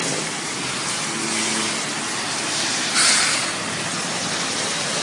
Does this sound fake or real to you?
real